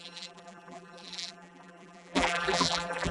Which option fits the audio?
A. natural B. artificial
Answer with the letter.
B